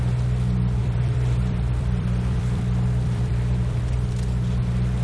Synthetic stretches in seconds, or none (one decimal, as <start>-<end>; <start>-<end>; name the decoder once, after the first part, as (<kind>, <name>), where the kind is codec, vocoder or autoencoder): 0.8-3.8 (vocoder, BigVGAN v2)